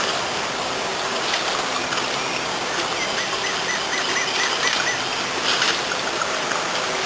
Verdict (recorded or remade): recorded